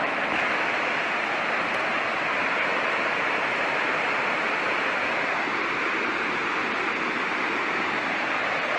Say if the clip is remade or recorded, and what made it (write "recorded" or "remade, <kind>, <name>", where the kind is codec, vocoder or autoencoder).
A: recorded